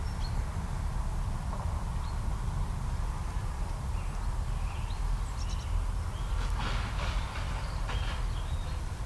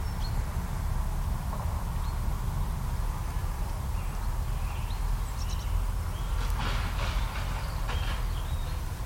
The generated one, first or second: first